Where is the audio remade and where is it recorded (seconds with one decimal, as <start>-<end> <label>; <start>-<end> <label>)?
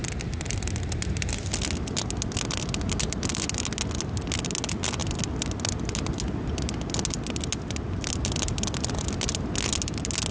0.0-10.3 recorded